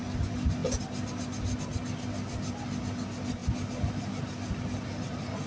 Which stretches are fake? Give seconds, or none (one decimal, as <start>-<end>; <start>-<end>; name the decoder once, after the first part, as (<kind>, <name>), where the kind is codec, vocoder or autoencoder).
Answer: none